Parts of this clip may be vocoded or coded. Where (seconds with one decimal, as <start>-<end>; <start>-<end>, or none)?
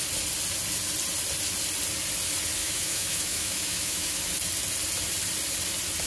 2.6-4.3